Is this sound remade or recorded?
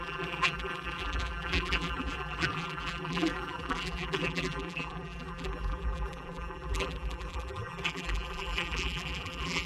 remade